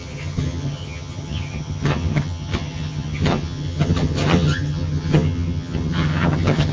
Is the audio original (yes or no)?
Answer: no